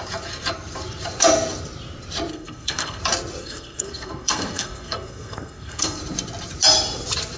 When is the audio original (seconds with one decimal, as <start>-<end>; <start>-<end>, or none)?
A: 0.0-2.3; 3.0-3.4; 6.0-7.4